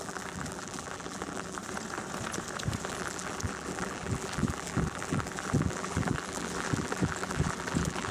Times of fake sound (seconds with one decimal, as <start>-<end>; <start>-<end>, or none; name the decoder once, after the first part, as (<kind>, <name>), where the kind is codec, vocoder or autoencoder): 0.0-1.6 (vocoder, BigVGAN v2); 2.8-8.1